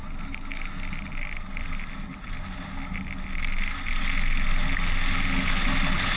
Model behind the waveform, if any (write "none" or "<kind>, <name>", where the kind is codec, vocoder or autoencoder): none